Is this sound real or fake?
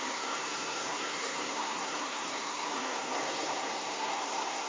fake